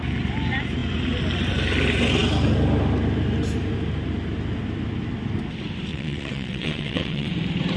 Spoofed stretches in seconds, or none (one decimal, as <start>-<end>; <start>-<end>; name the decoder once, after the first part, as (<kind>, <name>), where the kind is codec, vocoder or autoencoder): 5.9-7.3 (vocoder, WaveNeXt)